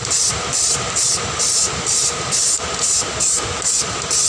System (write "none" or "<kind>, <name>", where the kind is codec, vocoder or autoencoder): vocoder, BigVGAN v2